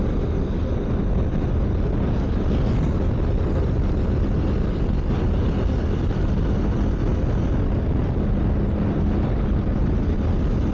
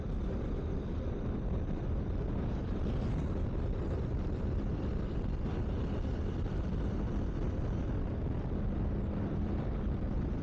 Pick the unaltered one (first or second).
first